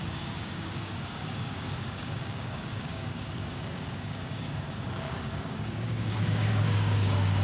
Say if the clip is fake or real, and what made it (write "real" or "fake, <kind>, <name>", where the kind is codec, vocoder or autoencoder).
fake, codec, DAC